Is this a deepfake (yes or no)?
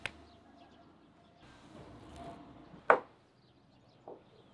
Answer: no